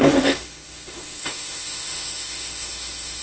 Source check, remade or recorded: remade